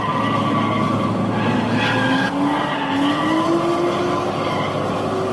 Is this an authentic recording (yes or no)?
yes